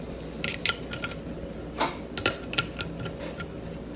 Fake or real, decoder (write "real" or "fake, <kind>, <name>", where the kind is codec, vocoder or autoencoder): real